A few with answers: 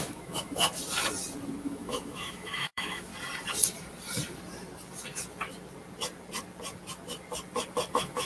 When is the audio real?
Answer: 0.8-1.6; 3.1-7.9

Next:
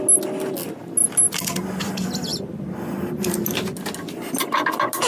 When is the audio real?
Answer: 0.0-5.1

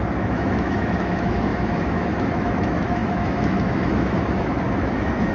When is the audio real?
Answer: none